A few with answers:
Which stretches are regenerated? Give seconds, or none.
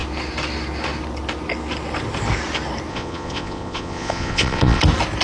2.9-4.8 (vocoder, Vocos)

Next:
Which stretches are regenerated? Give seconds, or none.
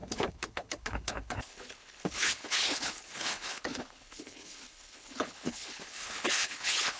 0.0-7.0 (codec, HILCodec)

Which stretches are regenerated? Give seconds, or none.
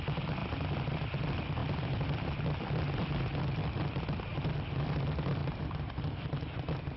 5.4-6.0 (vocoder, BigVGAN v2)